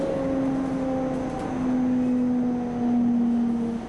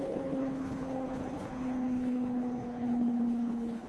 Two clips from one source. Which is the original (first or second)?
first